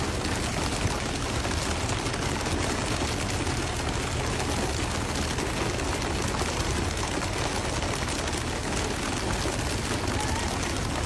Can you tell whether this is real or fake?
real